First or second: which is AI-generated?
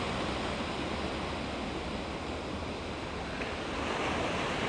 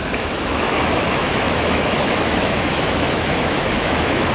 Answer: second